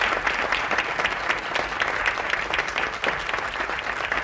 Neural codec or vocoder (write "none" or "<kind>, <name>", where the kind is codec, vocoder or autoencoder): none